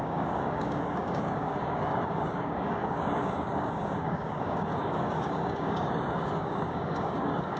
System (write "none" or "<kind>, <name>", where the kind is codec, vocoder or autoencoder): codec, DAC